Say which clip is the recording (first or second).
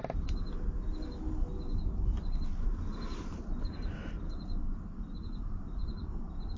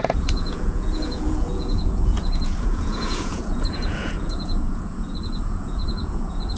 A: first